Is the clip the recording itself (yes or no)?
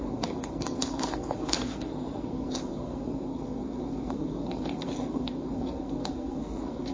no